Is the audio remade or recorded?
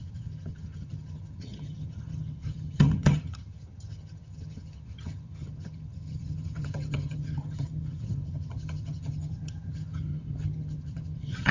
remade